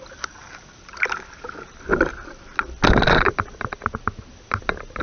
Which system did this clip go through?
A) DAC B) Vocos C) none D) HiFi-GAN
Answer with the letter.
C